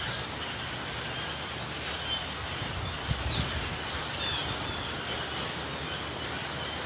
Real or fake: real